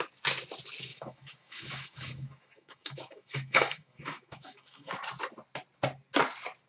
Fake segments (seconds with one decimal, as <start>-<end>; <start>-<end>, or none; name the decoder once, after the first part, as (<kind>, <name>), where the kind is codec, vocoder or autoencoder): 0.9-4.9 (autoencoder, DAC-VAE)